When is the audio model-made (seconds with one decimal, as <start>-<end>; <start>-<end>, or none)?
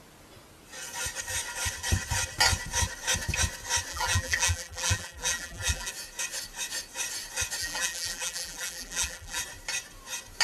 3.9-5.9; 7.6-9.4